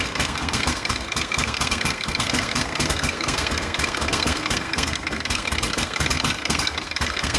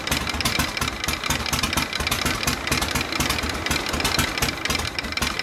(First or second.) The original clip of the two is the second